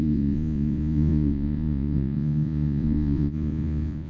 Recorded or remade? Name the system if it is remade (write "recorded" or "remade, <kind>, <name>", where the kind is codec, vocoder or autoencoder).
remade, vocoder, Vocos